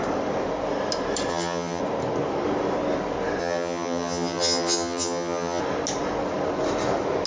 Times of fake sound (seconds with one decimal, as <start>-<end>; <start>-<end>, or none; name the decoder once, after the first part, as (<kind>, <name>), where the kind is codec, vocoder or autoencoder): 1.3-1.8 (vocoder, HiFi-GAN); 3.4-5.6